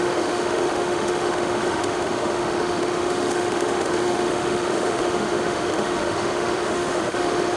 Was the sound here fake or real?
fake